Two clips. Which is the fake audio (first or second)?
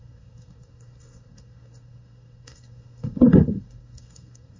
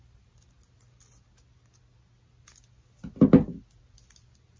first